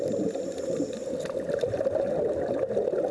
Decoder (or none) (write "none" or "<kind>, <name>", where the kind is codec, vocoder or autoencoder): none